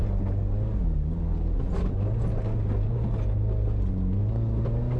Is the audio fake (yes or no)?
no